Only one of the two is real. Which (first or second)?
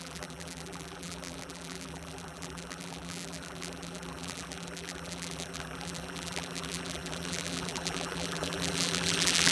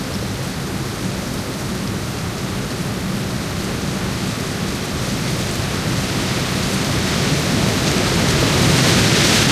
second